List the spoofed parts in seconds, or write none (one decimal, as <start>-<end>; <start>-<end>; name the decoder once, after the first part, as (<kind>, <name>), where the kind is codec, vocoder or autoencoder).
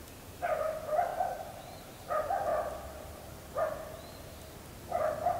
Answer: 1.1-1.9 (vocoder, BigVGAN v2)